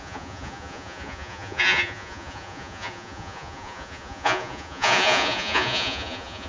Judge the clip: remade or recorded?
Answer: remade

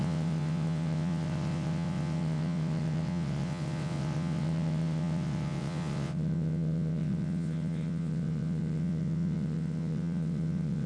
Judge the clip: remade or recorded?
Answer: remade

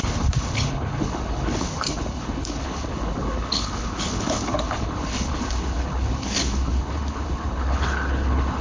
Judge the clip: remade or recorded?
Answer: remade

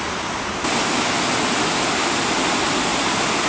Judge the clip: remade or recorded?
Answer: recorded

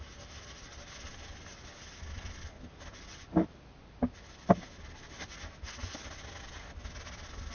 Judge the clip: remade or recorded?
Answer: recorded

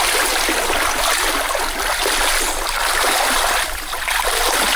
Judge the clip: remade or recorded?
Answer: recorded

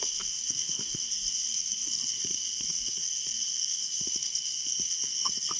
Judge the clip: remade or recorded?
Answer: remade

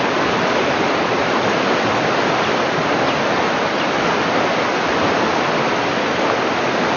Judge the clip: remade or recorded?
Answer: recorded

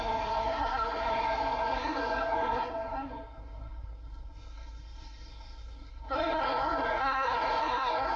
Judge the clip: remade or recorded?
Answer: remade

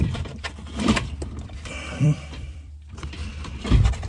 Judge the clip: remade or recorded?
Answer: remade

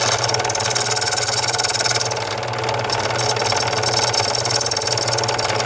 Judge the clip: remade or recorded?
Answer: recorded